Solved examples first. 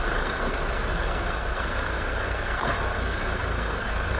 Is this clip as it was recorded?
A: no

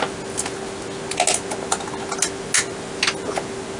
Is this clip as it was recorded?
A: yes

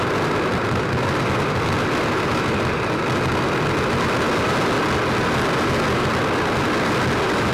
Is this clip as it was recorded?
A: yes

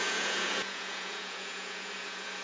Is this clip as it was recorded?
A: no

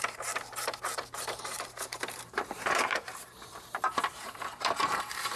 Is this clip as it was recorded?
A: no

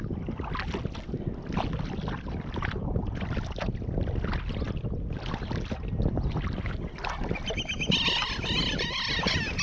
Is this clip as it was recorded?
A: yes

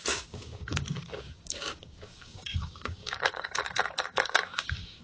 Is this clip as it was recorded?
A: no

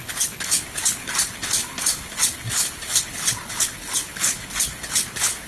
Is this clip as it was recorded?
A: no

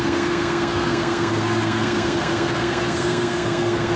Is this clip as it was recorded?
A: no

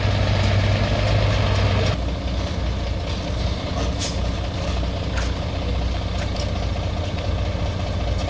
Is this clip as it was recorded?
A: yes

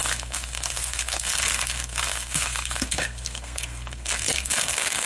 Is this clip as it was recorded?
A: no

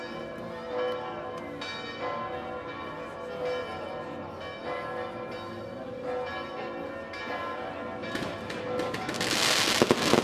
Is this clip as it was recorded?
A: yes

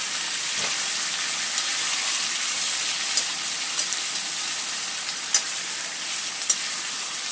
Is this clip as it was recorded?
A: yes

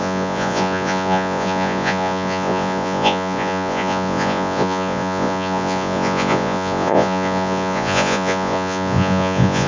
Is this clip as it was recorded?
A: no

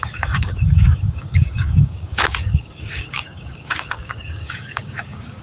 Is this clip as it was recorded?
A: no